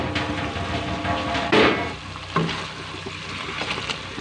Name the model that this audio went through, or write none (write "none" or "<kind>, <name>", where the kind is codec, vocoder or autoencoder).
none